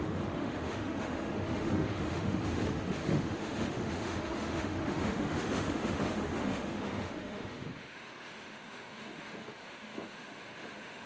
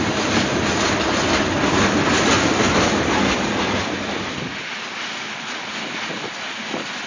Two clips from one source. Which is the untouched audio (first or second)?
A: second